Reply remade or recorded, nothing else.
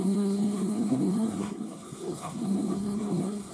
remade